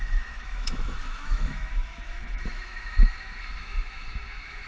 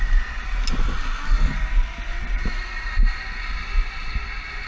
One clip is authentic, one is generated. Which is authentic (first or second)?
second